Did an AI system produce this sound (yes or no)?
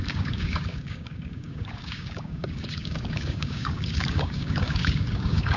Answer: yes